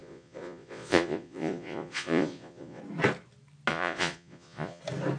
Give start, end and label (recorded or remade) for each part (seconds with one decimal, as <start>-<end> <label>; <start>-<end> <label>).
0.0-2.8 remade; 2.8-3.7 recorded; 3.7-4.8 remade; 4.8-5.2 recorded